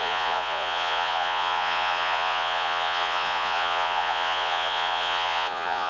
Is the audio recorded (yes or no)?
no